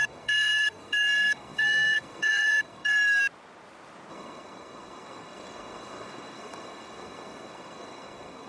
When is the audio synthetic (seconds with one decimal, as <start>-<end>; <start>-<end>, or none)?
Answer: 0.0-3.2; 4.1-8.5